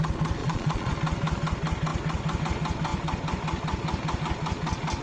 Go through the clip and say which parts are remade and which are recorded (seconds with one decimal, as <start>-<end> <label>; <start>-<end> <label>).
0.0-0.4 recorded; 0.4-0.9 remade; 0.9-5.0 recorded